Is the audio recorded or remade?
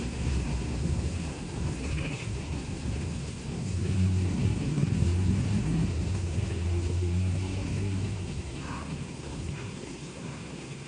remade